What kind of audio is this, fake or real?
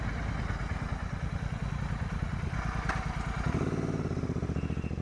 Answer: real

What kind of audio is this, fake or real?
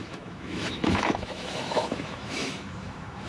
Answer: fake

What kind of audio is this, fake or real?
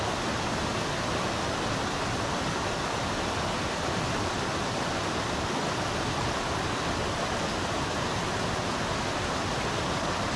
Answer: real